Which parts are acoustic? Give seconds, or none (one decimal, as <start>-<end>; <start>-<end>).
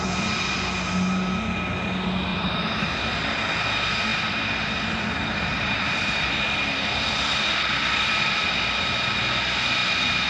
0.0-2.3; 3.1-4.1; 8.5-10.3